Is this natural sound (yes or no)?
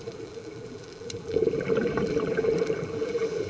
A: no